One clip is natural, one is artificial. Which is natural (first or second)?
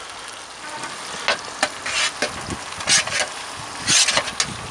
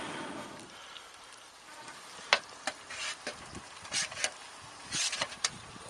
first